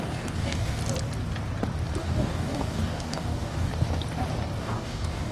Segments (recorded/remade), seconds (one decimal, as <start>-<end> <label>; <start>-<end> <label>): 0.0-0.8 remade; 0.8-2.0 recorded; 2.0-3.7 remade; 3.7-4.6 recorded; 4.6-5.3 remade